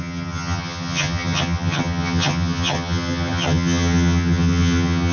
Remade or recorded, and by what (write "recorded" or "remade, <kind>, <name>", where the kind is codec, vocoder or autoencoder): remade, vocoder, HiFi-GAN